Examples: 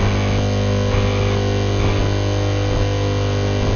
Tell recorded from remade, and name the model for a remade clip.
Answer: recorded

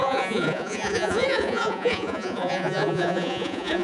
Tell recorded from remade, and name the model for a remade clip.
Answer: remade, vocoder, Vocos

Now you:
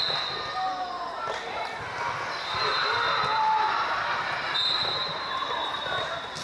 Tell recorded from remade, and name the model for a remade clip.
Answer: recorded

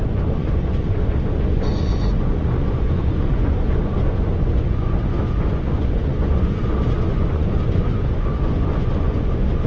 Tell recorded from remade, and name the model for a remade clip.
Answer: remade, vocoder, Vocos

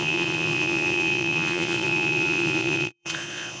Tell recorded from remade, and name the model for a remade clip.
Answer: remade, vocoder, Vocos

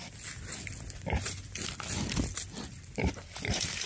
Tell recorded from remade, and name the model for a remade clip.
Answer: recorded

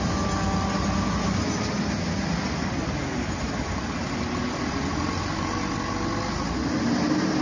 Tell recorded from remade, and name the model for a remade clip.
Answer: recorded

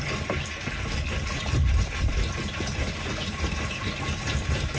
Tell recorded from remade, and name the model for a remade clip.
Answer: recorded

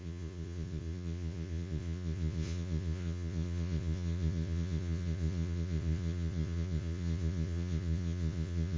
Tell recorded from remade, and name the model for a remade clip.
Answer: remade, vocoder, Vocos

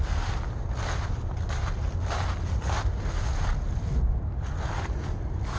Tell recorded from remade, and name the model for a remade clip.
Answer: recorded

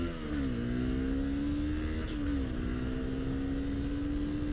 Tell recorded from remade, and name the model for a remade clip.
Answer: recorded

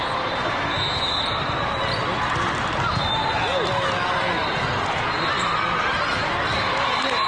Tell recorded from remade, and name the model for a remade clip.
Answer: recorded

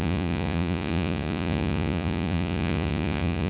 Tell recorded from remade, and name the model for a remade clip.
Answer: remade, vocoder, Vocos